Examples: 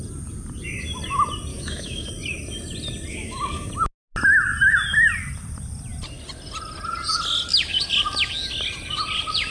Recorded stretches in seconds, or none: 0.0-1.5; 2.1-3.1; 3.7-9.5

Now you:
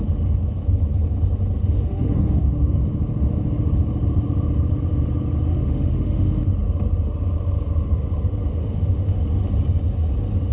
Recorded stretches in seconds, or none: 0.0-1.6; 2.8-5.5; 6.4-8.6; 9.2-10.5

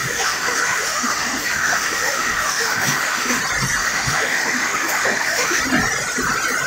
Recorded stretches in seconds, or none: 3.4-3.8; 5.6-6.7

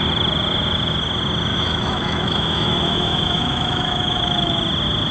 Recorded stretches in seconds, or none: 0.0-1.5; 4.6-5.1

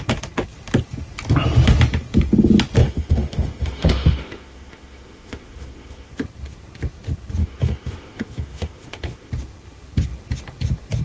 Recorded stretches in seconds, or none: 0.0-2.8; 6.1-7.4; 9.3-11.0

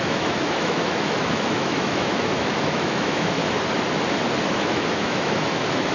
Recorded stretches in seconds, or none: 3.4-4.5